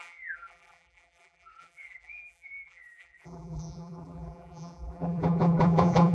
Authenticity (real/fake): fake